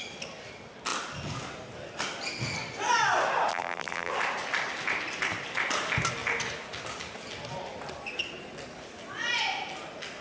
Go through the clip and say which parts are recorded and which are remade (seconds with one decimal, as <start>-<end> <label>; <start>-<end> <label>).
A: 0.0-3.5 recorded; 3.5-4.1 remade; 4.1-10.2 recorded